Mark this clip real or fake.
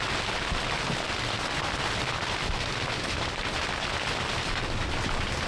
real